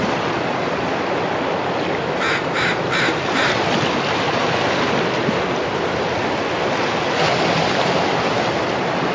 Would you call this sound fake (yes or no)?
no